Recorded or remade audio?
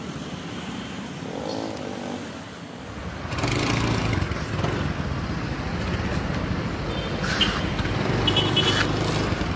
recorded